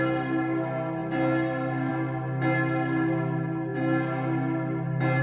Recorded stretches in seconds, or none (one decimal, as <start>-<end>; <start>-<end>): 0.0-5.2